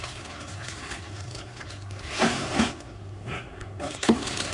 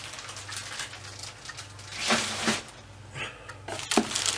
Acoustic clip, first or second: second